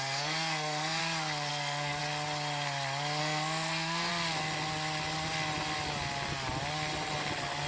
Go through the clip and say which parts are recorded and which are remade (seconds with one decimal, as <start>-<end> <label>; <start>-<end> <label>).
0.0-1.0 remade; 1.0-1.5 recorded; 1.5-2.0 remade; 2.0-3.2 recorded; 3.2-4.1 remade; 4.1-7.7 recorded